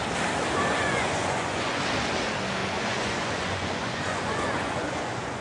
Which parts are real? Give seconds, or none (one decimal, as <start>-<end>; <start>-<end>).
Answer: 0.0-0.7; 1.8-2.6

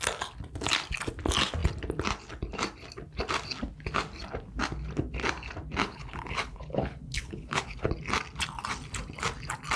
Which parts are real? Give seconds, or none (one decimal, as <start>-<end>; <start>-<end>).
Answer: 0.0-5.8; 7.9-9.8

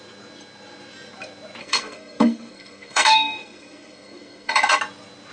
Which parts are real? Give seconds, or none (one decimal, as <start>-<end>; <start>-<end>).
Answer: 0.0-1.6; 4.8-5.3

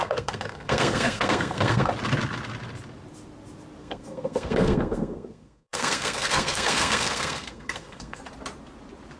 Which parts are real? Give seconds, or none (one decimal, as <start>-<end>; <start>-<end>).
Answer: 1.9-3.8; 8.2-9.2

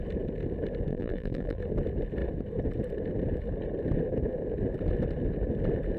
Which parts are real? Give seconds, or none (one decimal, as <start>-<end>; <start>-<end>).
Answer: 0.0-0.9; 1.6-6.0